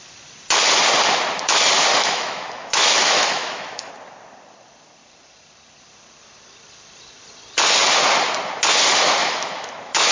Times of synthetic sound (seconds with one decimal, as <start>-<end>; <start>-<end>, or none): 1.9-3.9; 9.2-10.1